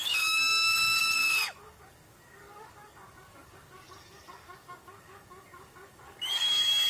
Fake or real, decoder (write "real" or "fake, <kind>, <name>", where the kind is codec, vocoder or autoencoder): fake, codec, DAC